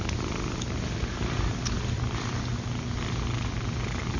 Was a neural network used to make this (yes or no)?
no